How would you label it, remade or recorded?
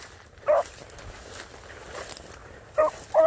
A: recorded